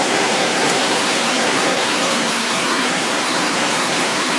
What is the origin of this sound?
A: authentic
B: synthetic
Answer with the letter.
B